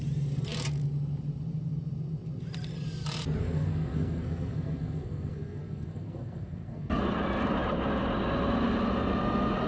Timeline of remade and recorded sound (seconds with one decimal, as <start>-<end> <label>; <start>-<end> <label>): 0.0-3.4 recorded; 3.4-7.0 remade; 7.0-9.7 recorded